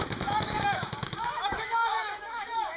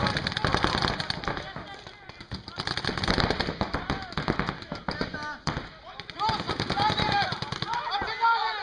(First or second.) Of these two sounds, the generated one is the first